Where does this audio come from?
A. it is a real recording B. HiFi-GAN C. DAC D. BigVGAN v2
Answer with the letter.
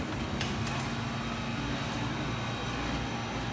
A